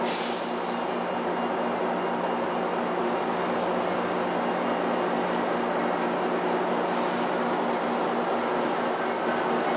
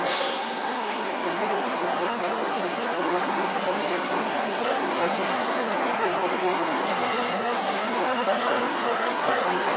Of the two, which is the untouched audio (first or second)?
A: first